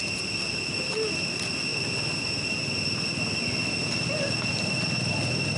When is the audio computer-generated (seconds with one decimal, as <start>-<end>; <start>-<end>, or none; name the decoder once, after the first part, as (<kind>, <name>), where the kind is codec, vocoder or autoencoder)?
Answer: none